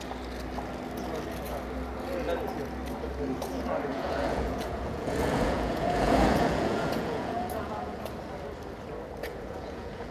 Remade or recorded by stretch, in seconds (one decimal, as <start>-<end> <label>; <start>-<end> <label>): 0.0-3.9 recorded; 3.9-8.0 remade; 8.0-9.2 recorded; 9.2-10.1 remade